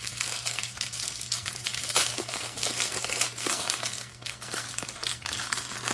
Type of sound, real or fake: fake